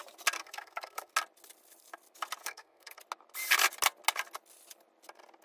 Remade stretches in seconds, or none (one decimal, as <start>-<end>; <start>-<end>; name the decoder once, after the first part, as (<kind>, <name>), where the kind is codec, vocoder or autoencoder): 0.4-1.1 (codec, SNAC); 2.4-3.0

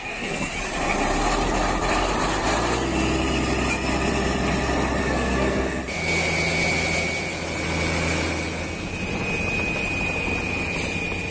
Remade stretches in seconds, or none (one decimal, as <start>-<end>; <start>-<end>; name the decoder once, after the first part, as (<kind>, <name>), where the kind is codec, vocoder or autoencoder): 0.0-0.5 (codec, SNAC); 5.0-5.8

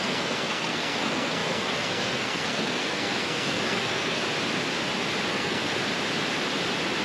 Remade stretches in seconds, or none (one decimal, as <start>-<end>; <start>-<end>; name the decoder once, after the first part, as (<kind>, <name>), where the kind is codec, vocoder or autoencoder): 0.0-4.2 (codec, SNAC); 5.3-5.8

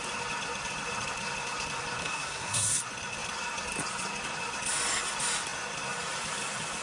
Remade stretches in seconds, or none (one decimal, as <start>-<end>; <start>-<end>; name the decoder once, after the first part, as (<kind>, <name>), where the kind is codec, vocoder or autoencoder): 2.0-2.8 (codec, SNAC)

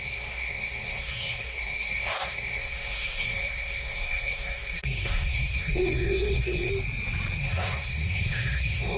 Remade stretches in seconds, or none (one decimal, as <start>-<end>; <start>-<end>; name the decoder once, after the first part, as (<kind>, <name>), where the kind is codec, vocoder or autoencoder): 0.0-6.7 (codec, SNAC); 7.4-9.0

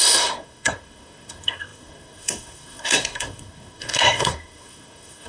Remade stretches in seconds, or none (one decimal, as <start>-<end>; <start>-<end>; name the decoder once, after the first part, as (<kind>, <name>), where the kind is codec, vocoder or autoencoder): 0.0-5.3 (codec, SNAC)

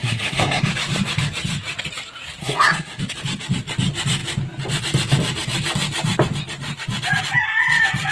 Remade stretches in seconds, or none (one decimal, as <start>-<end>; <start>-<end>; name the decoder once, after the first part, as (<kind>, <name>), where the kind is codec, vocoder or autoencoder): 0.0-0.7 (codec, SNAC); 2.4-3.0

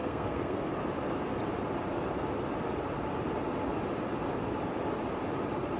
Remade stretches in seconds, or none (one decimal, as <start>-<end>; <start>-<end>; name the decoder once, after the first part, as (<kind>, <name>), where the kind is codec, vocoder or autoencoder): 0.0-0.6 (codec, SNAC)